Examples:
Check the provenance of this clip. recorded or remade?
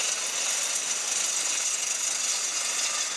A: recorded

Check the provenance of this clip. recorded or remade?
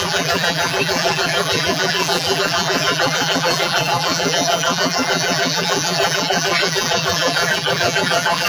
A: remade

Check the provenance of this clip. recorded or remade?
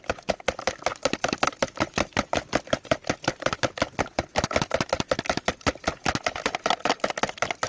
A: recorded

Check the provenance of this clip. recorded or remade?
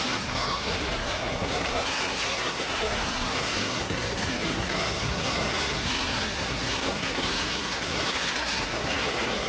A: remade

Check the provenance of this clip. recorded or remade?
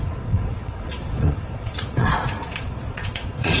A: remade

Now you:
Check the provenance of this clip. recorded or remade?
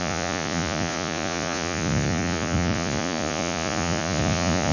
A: remade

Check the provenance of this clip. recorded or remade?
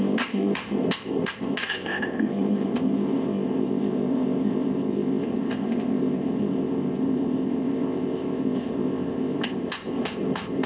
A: remade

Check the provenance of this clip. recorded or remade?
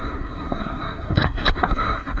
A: remade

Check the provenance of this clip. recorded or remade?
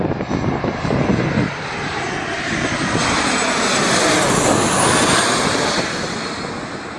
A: recorded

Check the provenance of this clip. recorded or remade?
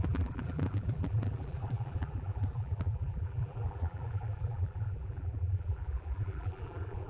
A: remade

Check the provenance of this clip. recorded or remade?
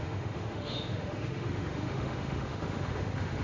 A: remade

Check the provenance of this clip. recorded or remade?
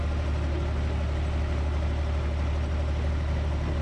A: recorded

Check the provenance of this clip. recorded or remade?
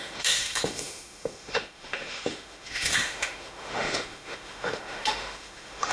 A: remade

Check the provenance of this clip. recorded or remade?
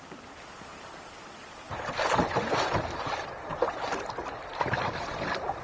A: remade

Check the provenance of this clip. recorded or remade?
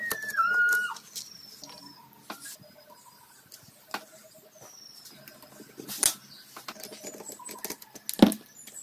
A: recorded